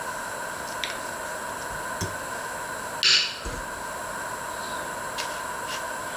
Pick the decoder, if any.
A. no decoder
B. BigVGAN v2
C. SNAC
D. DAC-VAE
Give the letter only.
A